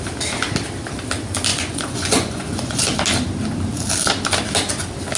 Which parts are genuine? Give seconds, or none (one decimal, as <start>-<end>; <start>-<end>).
0.0-1.5; 2.8-5.2